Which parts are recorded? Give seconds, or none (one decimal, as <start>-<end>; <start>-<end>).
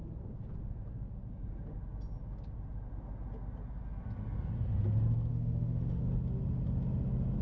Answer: 0.0-5.3; 6.0-7.4